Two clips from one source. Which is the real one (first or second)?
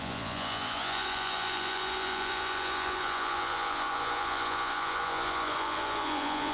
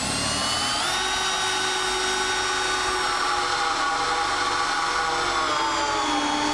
second